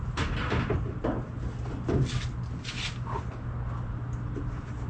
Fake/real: real